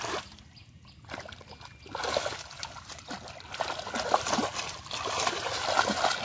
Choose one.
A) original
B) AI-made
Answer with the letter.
A